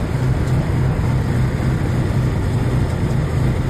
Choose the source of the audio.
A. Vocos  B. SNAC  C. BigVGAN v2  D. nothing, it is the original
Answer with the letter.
D